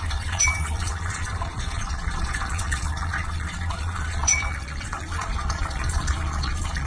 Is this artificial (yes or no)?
yes